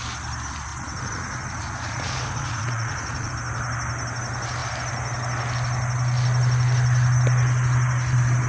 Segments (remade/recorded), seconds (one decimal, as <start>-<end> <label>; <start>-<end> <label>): 0.0-0.7 recorded; 0.7-3.3 remade; 3.3-8.5 recorded